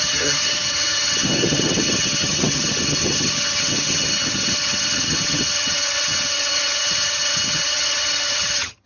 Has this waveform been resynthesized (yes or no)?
yes